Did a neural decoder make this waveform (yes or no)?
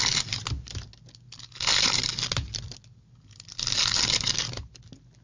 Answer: no